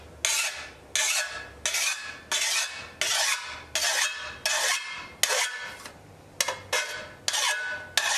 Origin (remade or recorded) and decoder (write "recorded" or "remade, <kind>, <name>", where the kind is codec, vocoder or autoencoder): recorded